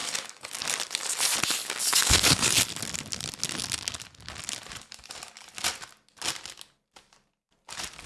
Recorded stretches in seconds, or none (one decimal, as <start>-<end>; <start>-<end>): 0.6-1.6; 2.5-8.1